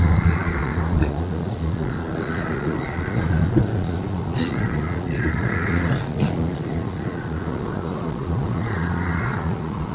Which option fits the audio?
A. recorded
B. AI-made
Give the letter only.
B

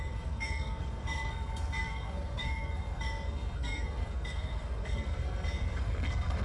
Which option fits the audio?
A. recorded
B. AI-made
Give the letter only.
B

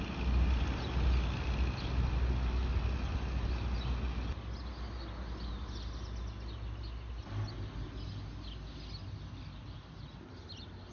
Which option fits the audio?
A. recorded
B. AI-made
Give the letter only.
A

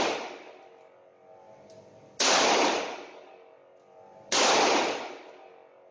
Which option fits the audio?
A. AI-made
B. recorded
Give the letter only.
B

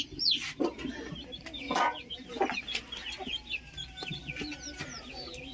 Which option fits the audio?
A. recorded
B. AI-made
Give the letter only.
A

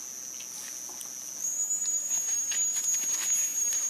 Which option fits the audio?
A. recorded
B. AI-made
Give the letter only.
A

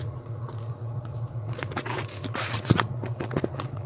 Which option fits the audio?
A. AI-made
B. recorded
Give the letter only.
A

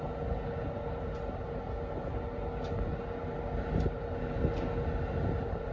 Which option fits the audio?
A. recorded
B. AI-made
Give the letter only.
A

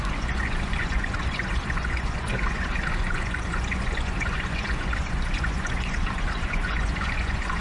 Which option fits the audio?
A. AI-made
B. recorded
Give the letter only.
A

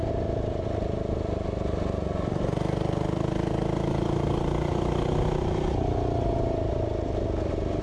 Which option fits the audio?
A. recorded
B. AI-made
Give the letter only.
A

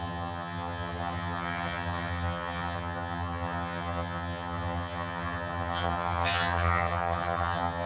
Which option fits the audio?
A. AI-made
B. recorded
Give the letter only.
A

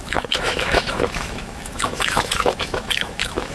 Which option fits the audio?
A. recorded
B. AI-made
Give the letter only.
B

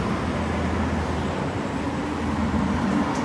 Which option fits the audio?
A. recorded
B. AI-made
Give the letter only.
A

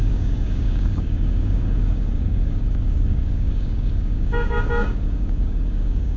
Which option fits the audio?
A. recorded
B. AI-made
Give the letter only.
B